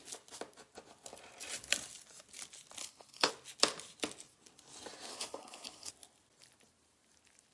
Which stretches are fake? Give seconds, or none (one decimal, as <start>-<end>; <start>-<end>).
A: 2.8-3.3; 5.1-5.9